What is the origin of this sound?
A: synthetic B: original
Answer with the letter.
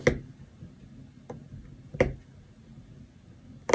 B